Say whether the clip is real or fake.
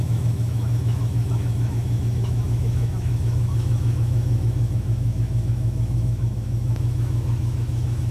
fake